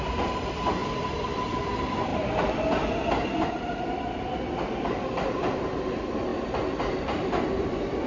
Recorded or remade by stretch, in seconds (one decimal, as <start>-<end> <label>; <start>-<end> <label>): 0.0-2.1 remade; 2.1-3.5 recorded; 3.5-6.3 remade; 6.3-7.0 recorded; 7.0-8.1 remade